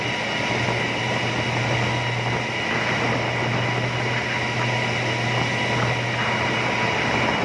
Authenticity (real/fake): real